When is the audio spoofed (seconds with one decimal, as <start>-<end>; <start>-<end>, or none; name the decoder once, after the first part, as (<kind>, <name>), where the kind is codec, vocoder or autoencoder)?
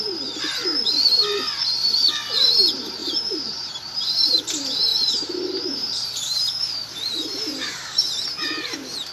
3.0-4.4 (vocoder, BigVGAN v2); 4.9-9.1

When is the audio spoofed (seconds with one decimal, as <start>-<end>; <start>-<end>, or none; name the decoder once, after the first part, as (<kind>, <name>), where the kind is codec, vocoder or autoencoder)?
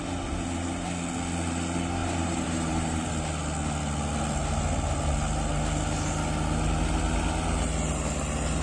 2.0-3.1 (vocoder, BigVGAN v2)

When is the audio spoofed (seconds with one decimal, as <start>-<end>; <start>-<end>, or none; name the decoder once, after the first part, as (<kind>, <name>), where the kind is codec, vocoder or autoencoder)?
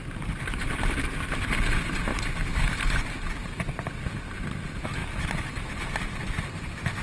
0.0-2.1 (vocoder, BigVGAN v2); 4.3-5.0; 6.2-7.0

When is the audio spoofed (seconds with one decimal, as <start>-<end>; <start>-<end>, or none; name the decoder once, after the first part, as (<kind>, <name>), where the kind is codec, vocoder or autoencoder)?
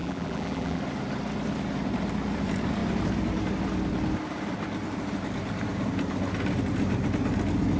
0.0-0.8 (vocoder, BigVGAN v2)